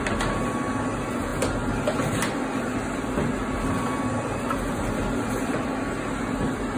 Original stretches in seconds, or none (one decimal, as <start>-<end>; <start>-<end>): 0.0-6.8